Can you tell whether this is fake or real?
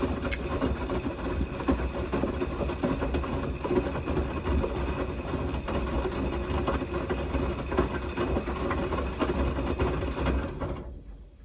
real